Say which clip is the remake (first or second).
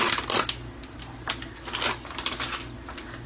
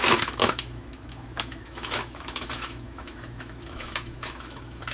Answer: second